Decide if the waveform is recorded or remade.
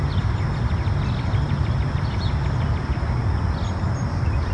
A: recorded